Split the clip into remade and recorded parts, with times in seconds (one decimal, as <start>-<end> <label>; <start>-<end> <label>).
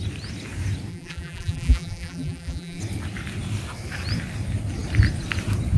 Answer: 0.0-0.9 recorded; 0.9-2.8 remade; 2.8-5.8 recorded